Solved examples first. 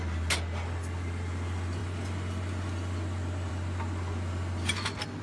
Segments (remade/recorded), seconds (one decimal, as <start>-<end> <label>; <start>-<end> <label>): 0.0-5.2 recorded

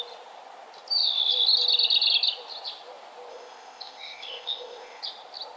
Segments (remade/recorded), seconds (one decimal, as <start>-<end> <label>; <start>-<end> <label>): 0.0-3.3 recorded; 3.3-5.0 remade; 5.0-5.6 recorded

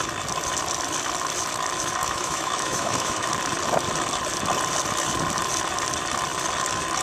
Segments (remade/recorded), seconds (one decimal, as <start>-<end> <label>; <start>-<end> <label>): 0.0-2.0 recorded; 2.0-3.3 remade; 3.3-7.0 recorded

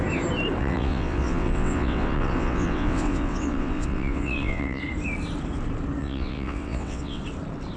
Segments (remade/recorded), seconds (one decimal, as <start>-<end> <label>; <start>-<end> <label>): 0.0-0.6 recorded; 0.6-4.8 remade; 4.8-6.0 recorded; 6.0-7.2 remade; 7.2-7.8 recorded

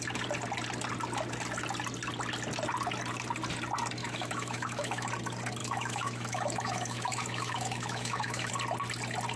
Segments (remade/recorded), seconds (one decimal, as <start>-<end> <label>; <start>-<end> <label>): 0.0-4.0 recorded; 4.0-5.1 remade; 5.1-5.6 recorded; 5.6-8.5 remade; 8.5-9.4 recorded